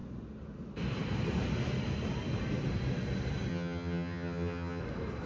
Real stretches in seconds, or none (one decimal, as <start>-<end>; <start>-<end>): 0.0-3.5; 4.8-5.3